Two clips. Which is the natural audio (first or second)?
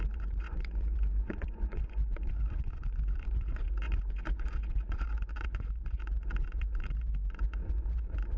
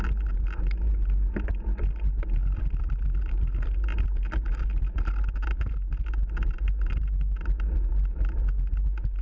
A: second